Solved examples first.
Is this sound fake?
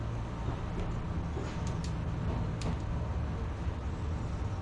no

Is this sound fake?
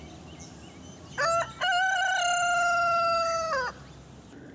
no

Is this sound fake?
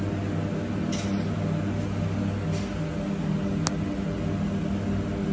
no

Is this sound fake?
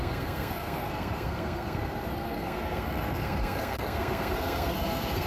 yes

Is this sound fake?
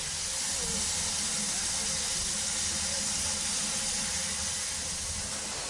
no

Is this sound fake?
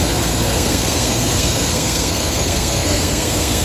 yes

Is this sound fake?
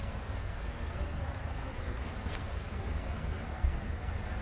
yes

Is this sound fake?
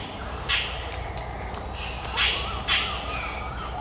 no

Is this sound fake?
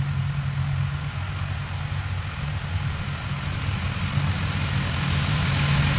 no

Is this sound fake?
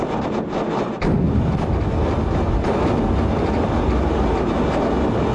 no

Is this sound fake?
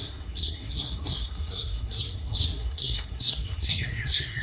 yes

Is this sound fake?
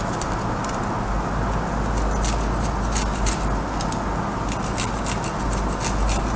no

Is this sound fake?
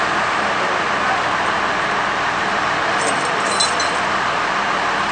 no